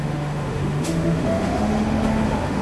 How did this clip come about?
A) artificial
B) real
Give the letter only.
A